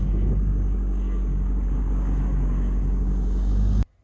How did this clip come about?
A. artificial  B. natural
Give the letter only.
B